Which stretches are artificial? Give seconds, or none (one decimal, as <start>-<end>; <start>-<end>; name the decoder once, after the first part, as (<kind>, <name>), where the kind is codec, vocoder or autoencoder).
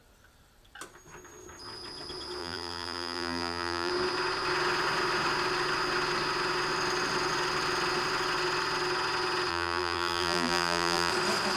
2.4-3.9 (vocoder, BigVGAN v2); 9.5-11.1